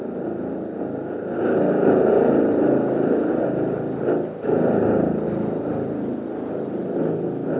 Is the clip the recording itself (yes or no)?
yes